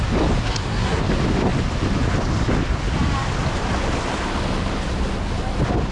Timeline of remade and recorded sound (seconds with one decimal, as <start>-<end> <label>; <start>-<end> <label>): 0.0-0.4 recorded; 0.4-1.0 remade; 1.0-5.9 recorded